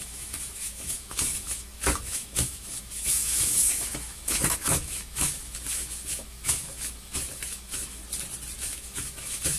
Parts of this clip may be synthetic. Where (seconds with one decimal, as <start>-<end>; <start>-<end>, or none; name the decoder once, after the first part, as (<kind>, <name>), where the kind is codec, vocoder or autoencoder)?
0.0-8.0 (autoencoder, DAC-VAE); 8.6-9.6